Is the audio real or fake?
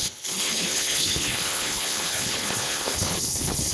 fake